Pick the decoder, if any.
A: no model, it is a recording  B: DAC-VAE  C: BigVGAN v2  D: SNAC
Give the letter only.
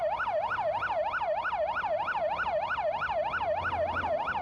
A